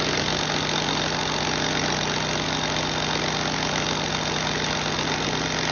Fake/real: real